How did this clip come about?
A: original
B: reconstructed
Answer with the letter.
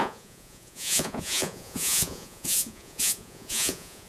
B